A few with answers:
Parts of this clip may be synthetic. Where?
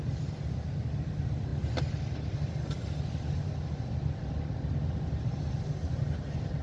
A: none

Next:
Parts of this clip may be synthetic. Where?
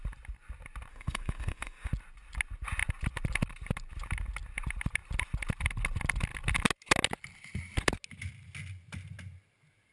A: 0.9-1.9 (autoencoder, DAC-VAE)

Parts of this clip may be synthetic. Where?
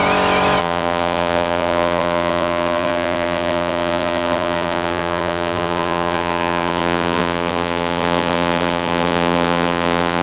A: 0.6-10.2 (vocoder, BigVGAN v2)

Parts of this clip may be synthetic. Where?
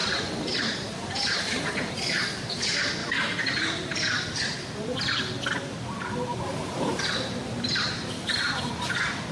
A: 0.0-1.9 (vocoder, BigVGAN v2); 3.0-5.0; 6.3-8.7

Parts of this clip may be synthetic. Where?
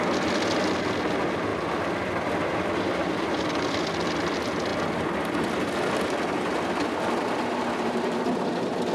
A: 1.5-3.4 (vocoder, BigVGAN v2)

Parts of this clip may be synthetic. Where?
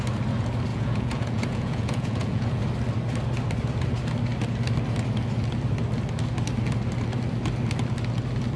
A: 0.7-2.6 (vocoder, Vocos)